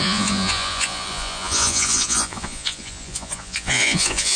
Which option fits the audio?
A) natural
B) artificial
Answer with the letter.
B